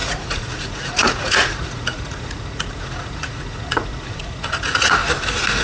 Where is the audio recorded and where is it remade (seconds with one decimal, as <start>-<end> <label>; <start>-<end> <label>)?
0.0-5.0 remade; 5.0-5.6 recorded